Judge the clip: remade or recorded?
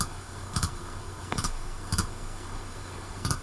remade